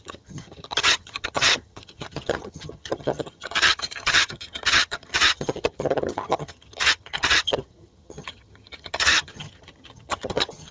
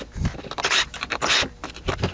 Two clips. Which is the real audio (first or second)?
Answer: second